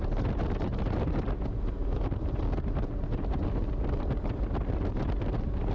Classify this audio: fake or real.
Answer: real